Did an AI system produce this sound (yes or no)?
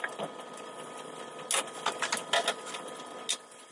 no